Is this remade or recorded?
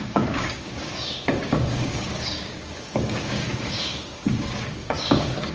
remade